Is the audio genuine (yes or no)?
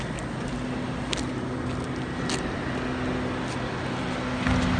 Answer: yes